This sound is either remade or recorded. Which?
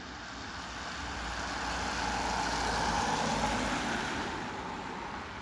recorded